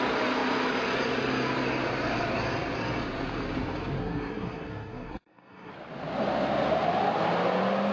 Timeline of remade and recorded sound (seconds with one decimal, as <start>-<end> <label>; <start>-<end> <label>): 0.0-4.0 recorded; 4.0-5.7 remade; 5.7-7.9 recorded